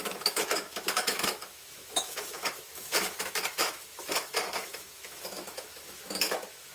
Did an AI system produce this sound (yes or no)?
yes